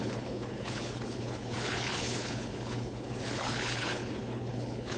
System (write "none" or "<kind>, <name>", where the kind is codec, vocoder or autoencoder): codec, HILCodec